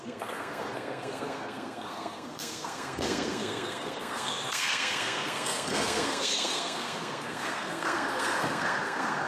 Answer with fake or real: fake